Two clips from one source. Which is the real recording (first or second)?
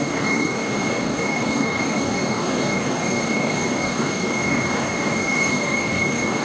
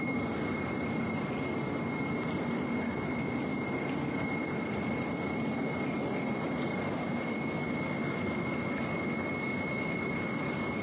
second